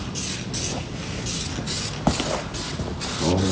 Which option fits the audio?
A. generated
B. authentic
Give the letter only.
B